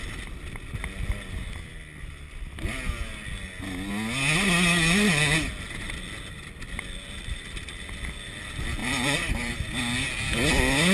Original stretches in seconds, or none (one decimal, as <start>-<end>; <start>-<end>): 0.0-8.8; 9.7-10.9